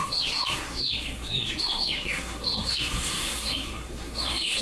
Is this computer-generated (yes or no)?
yes